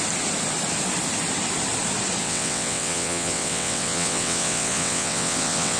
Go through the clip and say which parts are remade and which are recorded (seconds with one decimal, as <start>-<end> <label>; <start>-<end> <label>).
0.0-2.2 recorded; 2.2-5.8 remade